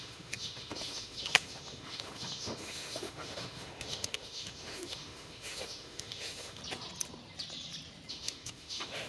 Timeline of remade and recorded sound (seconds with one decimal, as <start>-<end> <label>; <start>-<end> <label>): 0.0-6.6 remade; 6.6-8.1 recorded; 8.1-9.1 remade